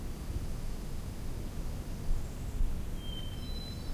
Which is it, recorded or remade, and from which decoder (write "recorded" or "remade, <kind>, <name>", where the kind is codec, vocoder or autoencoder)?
recorded